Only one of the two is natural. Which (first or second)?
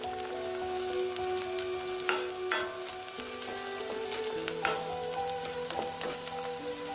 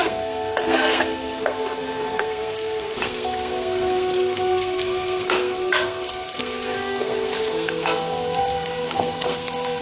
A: first